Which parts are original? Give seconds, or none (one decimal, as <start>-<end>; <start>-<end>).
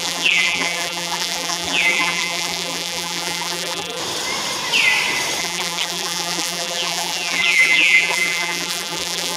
4.0-5.4